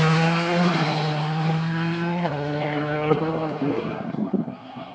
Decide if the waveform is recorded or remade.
remade